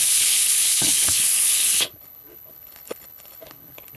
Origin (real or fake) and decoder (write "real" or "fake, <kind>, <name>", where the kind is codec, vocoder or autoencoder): fake, codec, HILCodec